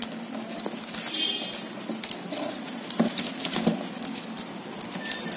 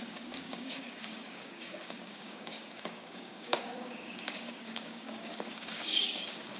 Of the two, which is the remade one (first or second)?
second